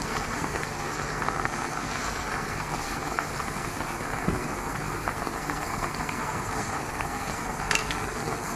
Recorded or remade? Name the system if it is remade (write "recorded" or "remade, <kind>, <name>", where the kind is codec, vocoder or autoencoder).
remade, codec, SNAC